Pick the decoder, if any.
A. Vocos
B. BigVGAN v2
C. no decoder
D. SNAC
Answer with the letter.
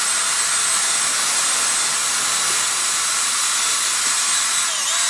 C